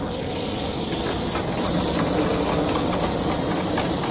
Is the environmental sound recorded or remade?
recorded